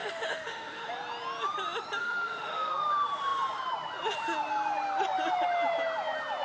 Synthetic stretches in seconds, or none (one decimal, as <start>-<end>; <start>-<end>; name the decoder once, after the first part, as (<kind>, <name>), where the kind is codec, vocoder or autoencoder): 0.0-0.9 (autoencoder, DAC-VAE); 2.0-2.7